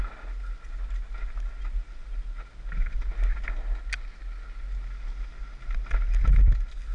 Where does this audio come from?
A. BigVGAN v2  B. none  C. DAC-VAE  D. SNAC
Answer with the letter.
B